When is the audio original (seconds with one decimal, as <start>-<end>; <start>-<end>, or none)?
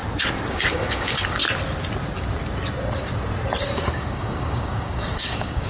0.0-0.5; 1.4-3.8